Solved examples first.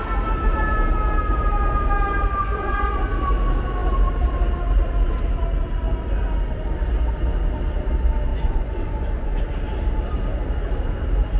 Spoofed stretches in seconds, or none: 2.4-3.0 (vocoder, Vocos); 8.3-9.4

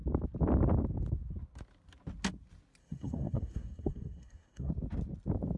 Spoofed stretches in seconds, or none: 2.8-4.7 (codec, SNAC)

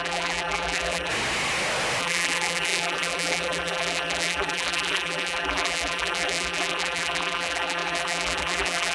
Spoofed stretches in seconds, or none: 0.0-1.1 (vocoder, BigVGAN v2); 2.0-8.9

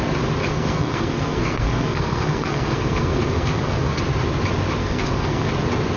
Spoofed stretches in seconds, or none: 0.4-4.0 (codec, SNAC); 4.8-5.5

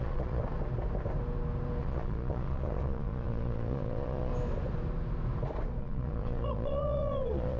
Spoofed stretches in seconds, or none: 0.0-0.4 (vocoder, Vocos); 1.8-4.3; 5.8-7.6

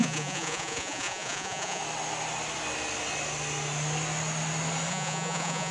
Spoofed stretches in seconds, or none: 0.0-1.8 (vocoder, Vocos); 4.9-5.7